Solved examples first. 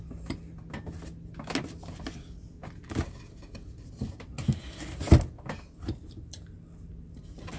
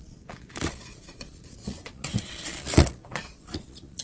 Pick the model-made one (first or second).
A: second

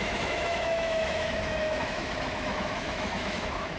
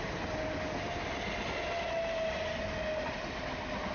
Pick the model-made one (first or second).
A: first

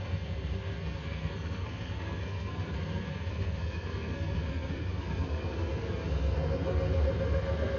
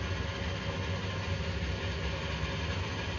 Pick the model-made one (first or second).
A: first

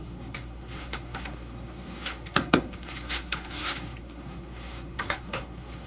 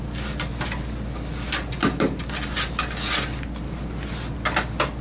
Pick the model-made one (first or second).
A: first